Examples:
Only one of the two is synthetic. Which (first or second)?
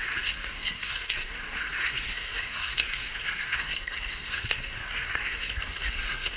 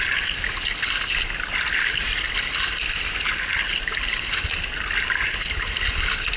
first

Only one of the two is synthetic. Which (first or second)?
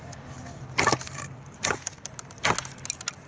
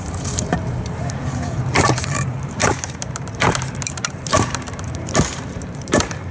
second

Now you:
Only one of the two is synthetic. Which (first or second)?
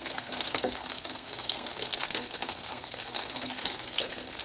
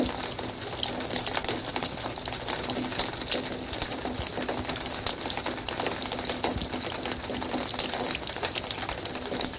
first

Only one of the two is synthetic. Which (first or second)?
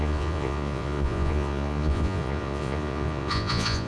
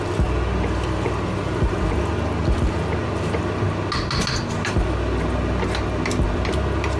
first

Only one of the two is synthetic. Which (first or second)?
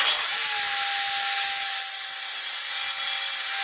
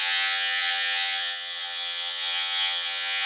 second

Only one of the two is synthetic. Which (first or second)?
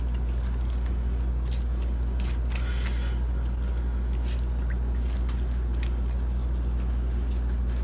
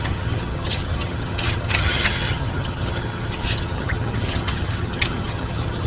second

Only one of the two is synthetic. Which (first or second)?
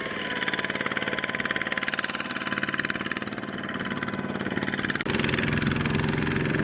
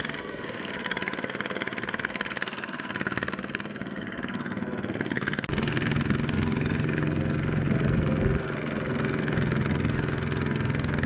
second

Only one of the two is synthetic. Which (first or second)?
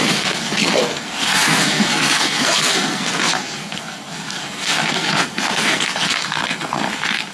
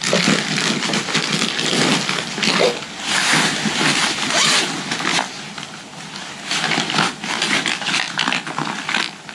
first